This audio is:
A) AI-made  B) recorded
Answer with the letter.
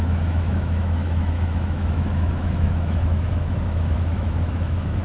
A